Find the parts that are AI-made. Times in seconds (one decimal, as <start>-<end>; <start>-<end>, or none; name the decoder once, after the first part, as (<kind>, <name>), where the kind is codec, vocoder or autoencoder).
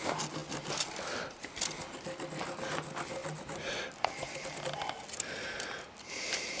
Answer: none